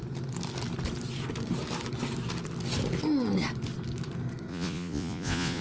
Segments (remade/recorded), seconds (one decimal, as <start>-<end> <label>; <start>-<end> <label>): 0.0-4.5 recorded; 4.5-5.6 remade